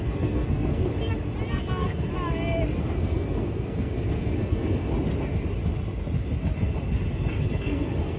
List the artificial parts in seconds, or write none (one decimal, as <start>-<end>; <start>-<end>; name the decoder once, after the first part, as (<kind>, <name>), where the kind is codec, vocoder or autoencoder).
0.0-0.9 (codec, SNAC); 1.5-2.1; 2.8-4.9; 7.4-8.2